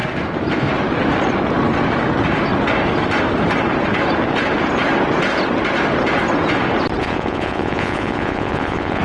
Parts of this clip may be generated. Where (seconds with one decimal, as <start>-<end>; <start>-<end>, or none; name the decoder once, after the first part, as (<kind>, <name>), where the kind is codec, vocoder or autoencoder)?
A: 7.0-9.0 (vocoder, Vocos)